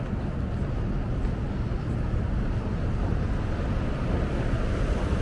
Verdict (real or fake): real